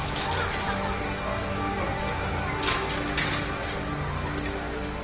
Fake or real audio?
real